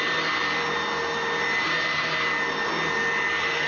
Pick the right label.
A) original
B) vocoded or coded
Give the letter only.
A